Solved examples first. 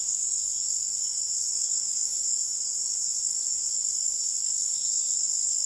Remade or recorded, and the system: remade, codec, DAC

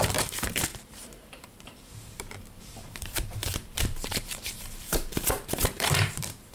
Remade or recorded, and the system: remade, vocoder, BigVGAN v2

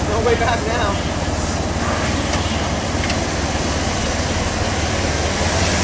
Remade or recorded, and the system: recorded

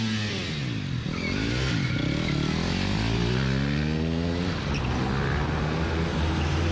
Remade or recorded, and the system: recorded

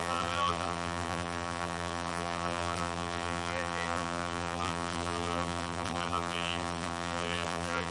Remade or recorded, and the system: remade, vocoder, BigVGAN v2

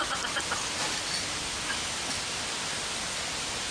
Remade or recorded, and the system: recorded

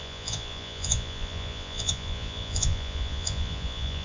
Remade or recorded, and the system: remade, vocoder, Vocos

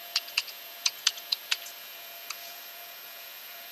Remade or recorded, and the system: remade, vocoder, Vocos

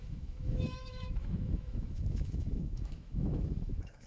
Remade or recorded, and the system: remade, autoencoder, DAC-VAE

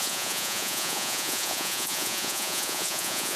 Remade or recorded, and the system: remade, vocoder, Vocos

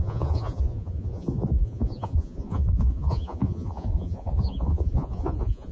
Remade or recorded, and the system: remade, vocoder, Vocos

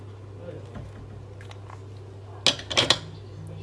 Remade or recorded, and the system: recorded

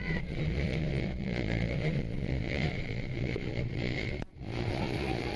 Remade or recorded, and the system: remade, vocoder, Vocos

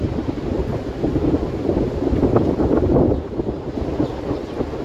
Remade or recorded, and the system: recorded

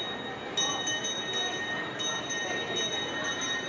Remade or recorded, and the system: recorded